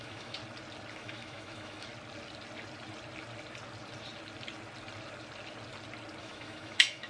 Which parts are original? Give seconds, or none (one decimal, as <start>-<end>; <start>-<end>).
0.4-0.9; 1.9-6.2